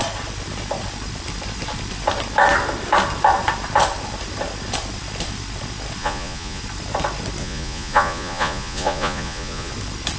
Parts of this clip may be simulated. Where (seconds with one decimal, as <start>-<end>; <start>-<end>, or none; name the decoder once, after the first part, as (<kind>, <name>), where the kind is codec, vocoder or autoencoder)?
6.0-6.6 (vocoder, Vocos); 7.4-9.7